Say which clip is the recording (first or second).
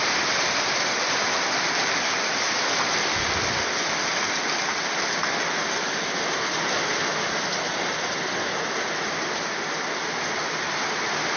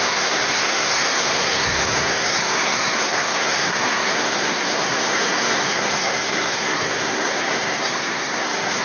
first